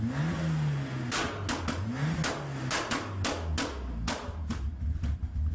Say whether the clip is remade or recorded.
recorded